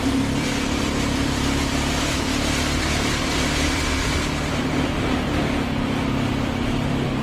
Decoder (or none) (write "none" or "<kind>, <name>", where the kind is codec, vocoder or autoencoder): vocoder, BigVGAN v2